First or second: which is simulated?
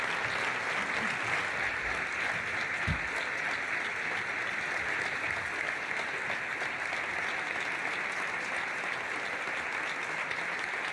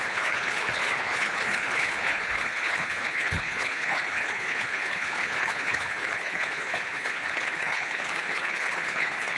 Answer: second